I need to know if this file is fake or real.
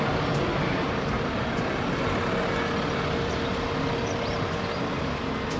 real